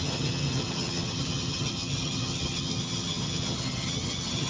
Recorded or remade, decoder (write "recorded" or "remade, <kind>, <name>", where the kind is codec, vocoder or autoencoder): remade, vocoder, HiFi-GAN